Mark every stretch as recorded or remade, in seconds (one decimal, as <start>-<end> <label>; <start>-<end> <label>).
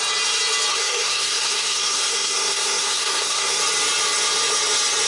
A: 0.0-0.7 recorded; 0.7-3.6 remade; 3.6-5.1 recorded